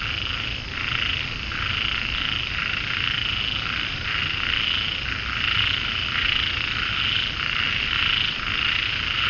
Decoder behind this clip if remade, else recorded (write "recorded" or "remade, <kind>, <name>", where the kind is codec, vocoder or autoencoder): recorded